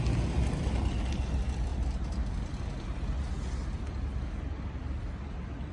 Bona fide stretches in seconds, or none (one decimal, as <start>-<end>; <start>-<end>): 0.0-5.7

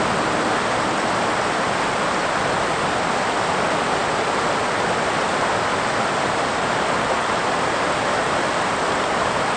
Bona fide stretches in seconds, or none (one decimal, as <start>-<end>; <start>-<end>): 0.0-9.6

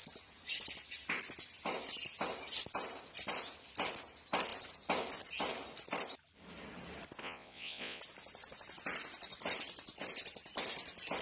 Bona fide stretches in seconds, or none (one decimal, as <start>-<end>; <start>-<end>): 0.0-7.2; 8.0-11.2